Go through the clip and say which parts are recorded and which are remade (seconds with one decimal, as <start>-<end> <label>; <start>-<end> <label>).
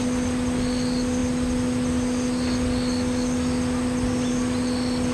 0.0-5.1 recorded